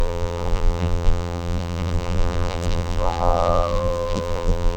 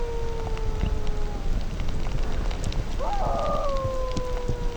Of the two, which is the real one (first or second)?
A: second